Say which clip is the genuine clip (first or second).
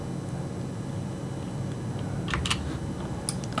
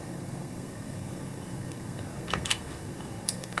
first